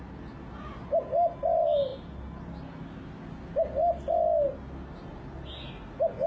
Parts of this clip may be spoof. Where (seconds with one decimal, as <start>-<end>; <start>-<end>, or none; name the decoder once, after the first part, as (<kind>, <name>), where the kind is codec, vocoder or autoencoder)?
none